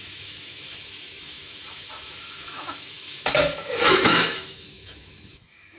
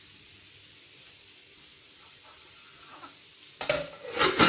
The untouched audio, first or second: second